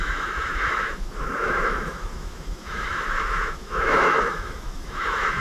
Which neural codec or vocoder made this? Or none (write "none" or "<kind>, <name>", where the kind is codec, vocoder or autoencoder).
autoencoder, DAC-VAE